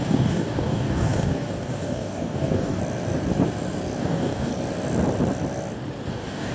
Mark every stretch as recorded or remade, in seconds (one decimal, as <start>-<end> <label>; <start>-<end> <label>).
0.0-2.8 remade; 2.8-4.0 recorded; 4.0-4.5 remade; 4.5-6.1 recorded; 6.1-6.5 remade